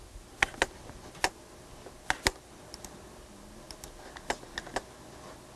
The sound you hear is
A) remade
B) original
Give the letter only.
B